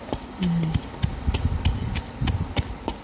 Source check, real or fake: real